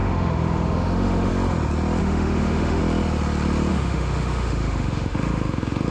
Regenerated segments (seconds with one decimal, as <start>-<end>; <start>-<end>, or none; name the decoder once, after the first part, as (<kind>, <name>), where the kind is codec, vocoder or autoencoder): 0.0-1.3 (autoencoder, DAC-VAE); 2.0-2.8; 3.7-5.9